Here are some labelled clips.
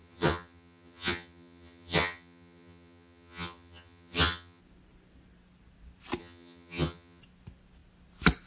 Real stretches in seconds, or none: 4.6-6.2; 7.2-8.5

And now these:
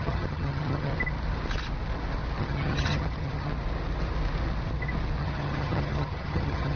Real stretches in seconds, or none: 0.9-2.4; 3.5-5.2